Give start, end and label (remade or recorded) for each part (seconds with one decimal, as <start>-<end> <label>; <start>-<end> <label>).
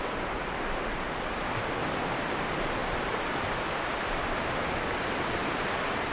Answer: 0.0-6.1 recorded